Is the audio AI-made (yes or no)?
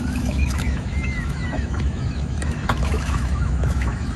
yes